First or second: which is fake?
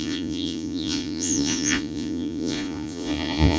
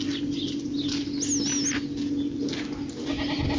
first